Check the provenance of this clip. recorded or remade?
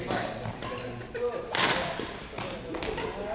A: recorded